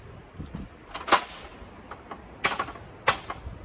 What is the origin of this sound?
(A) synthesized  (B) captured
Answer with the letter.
B